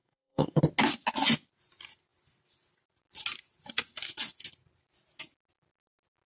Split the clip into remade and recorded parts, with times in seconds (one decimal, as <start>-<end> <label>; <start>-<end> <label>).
0.0-0.6 remade; 0.6-6.3 recorded